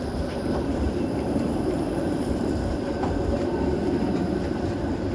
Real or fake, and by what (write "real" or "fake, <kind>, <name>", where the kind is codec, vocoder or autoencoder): fake, vocoder, BigVGAN v2